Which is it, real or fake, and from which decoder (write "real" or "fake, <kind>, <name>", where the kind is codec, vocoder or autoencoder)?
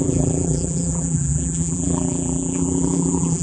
fake, vocoder, BigVGAN v2